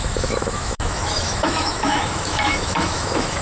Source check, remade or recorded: remade